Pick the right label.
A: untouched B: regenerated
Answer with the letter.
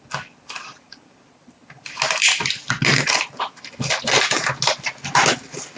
A